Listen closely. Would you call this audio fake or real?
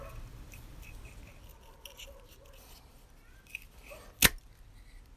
real